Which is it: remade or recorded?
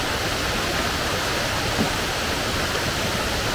recorded